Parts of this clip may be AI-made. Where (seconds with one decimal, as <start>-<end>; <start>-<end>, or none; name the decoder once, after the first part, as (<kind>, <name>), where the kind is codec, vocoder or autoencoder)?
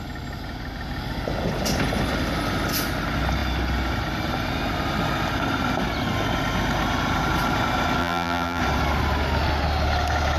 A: 8.0-8.6 (vocoder, BigVGAN v2)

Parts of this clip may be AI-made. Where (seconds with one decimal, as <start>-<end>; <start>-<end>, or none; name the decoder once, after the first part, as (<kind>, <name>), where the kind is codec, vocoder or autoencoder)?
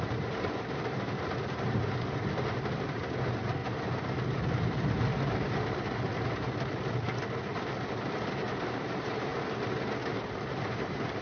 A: 0.0-3.6 (vocoder, BigVGAN v2); 7.9-9.3; 10.1-11.2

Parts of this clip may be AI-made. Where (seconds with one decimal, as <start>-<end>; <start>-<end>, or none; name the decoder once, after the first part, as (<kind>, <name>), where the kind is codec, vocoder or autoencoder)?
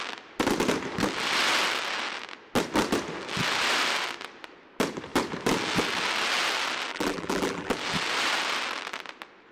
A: 6.9-7.7 (vocoder, BigVGAN v2)